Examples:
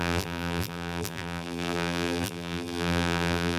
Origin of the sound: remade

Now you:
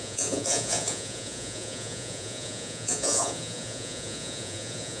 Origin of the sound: remade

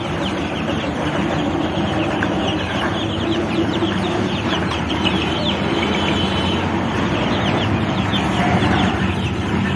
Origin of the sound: remade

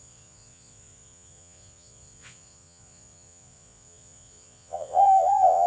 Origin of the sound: remade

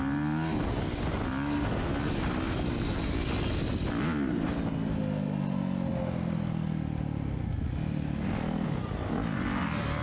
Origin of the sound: recorded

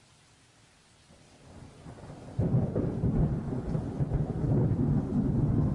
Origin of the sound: recorded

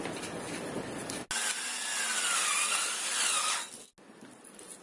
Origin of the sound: recorded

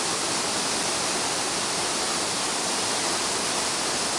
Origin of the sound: recorded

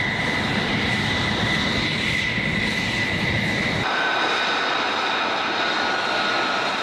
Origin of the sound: recorded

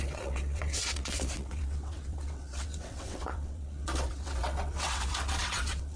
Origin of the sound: remade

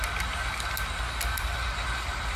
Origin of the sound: recorded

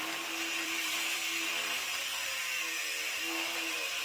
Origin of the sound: remade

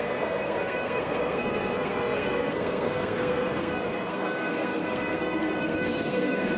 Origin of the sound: remade